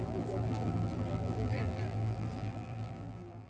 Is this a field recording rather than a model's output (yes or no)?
no